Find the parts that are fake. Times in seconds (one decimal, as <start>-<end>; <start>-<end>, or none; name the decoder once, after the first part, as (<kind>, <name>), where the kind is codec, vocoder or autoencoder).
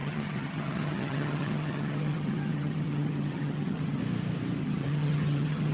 0.0-4.0 (vocoder, HiFi-GAN); 4.6-5.7